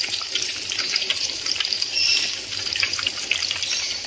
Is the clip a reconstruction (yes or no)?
yes